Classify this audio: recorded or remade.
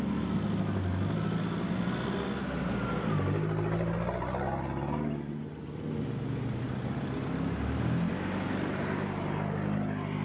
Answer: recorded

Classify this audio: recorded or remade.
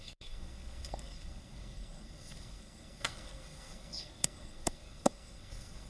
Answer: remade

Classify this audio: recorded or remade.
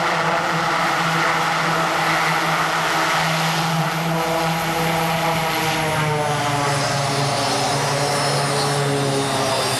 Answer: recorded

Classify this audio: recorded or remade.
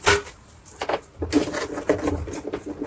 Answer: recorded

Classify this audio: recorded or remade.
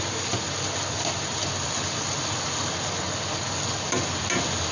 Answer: recorded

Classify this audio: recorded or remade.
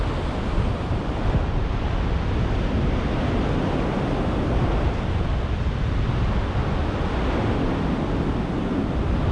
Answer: recorded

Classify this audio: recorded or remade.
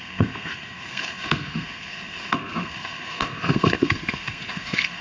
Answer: remade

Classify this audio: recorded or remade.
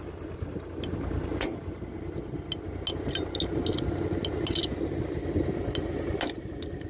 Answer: recorded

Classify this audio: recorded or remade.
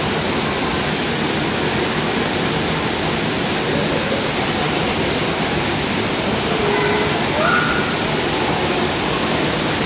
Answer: recorded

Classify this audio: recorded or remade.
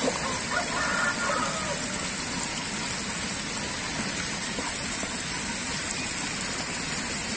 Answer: recorded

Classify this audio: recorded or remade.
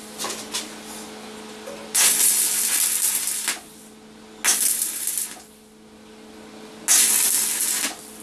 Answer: recorded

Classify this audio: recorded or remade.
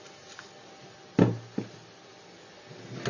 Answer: recorded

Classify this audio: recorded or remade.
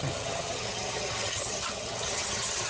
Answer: remade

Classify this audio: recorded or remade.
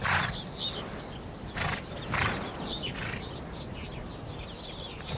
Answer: recorded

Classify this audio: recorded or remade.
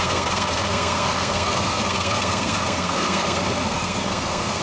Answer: remade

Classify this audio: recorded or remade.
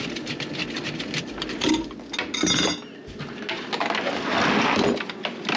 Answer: recorded